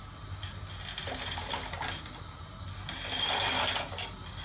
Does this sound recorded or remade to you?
recorded